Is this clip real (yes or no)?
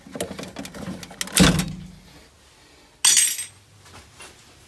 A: yes